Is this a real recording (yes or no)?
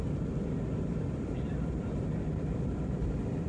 no